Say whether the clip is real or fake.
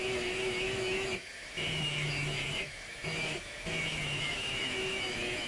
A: fake